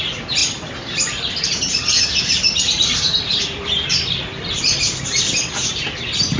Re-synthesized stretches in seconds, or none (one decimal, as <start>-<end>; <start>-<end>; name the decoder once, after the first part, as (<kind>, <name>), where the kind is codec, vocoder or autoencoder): 0.4-4.1 (vocoder, BigVGAN v2)